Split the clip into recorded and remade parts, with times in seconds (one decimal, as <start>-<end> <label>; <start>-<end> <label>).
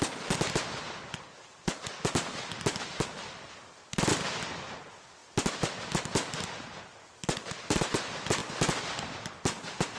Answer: 0.0-10.0 recorded